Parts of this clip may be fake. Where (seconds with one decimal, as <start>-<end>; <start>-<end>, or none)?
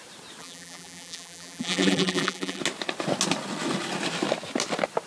0.4-2.6